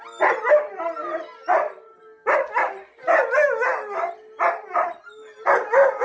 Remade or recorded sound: recorded